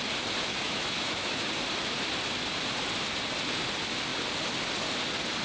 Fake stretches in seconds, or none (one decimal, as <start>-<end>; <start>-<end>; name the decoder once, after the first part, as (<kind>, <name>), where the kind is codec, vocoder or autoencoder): 0.5-1.5 (autoencoder, DAC-VAE)